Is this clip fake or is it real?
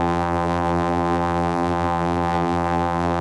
fake